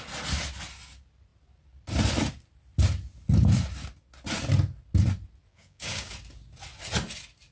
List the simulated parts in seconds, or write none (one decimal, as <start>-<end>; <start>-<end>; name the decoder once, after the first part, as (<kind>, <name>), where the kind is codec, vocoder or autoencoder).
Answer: 5.5-6.1 (codec, DAC)

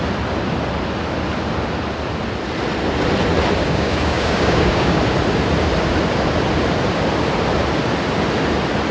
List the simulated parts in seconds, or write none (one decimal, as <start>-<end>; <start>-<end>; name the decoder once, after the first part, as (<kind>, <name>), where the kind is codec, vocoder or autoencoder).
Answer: 3.6-5.0 (codec, DAC)